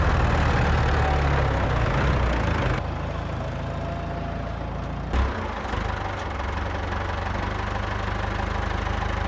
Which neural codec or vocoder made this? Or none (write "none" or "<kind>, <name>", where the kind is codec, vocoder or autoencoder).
none